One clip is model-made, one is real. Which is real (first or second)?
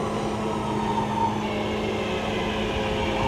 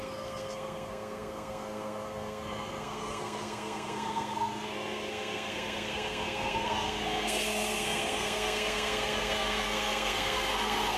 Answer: first